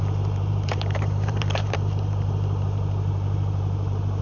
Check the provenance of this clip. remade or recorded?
remade